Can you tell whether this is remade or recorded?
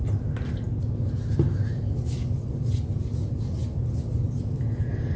recorded